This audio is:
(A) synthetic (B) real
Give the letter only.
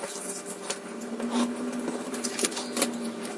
B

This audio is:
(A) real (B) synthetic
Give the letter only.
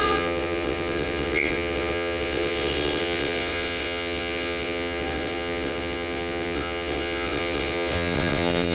B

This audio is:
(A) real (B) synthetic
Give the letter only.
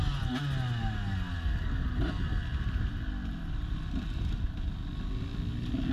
A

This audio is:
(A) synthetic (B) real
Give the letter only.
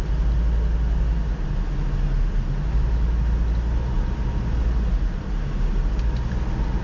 B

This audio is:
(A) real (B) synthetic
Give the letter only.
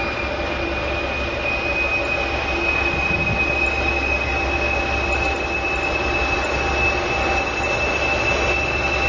A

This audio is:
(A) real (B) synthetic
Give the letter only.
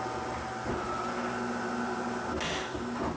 A